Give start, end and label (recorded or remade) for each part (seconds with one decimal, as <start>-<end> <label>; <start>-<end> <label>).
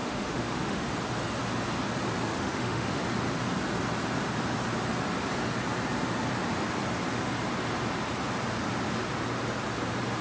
0.0-0.9 remade; 0.9-2.3 recorded; 2.3-3.0 remade; 3.0-10.2 recorded